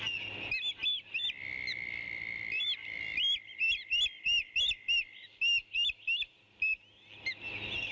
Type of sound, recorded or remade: recorded